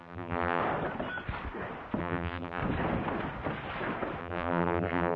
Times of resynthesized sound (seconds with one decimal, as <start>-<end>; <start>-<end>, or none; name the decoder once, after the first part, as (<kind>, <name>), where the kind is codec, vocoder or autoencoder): 0.0-0.6 (vocoder, BigVGAN v2); 2.0-2.6; 4.2-5.2